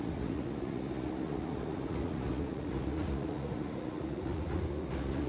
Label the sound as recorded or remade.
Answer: remade